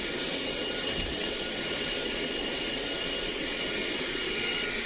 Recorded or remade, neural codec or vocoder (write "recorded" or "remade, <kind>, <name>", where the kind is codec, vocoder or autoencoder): remade, vocoder, WaveNeXt